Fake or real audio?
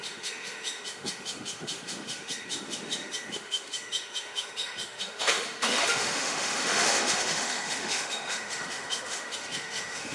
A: fake